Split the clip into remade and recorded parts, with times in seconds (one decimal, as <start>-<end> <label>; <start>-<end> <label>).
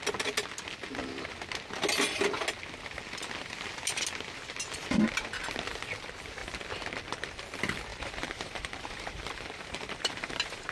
0.0-7.9 recorded; 7.9-10.7 remade